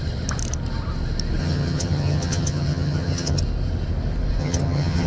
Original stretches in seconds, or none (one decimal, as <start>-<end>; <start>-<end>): 0.0-1.4; 3.4-4.4